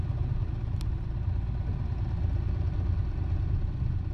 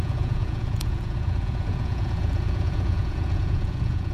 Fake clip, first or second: second